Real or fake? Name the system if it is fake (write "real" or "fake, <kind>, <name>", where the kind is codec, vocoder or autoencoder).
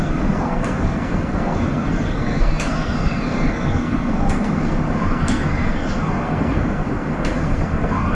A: fake, codec, SNAC